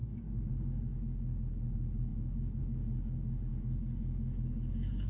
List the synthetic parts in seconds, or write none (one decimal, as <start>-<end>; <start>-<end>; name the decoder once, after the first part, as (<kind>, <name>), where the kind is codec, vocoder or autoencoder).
0.0-5.1 (codec, DAC)